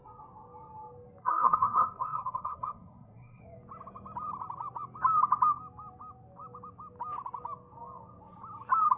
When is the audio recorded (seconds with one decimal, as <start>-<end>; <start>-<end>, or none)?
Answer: 0.0-1.2; 3.4-9.0